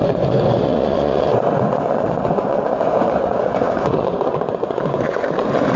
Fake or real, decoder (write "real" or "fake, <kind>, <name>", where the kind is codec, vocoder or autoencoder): fake, vocoder, Vocos